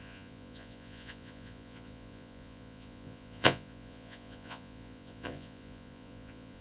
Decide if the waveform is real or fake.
fake